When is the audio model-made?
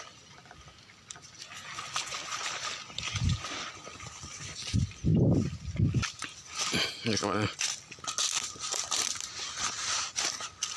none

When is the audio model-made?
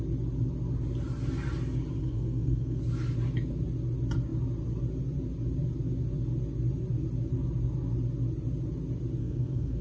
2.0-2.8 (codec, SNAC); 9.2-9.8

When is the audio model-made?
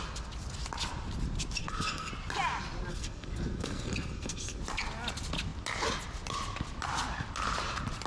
1.6-2.1 (codec, SNAC); 2.9-4.6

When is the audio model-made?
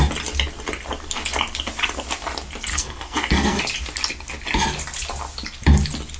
2.7-3.6 (codec, SNAC)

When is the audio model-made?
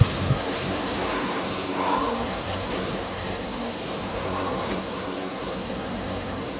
0.0-6.6 (codec, SNAC)